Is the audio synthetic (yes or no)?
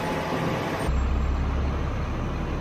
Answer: no